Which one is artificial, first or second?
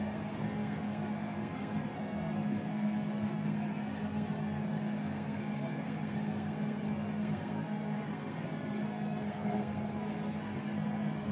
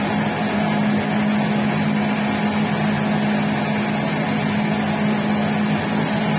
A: first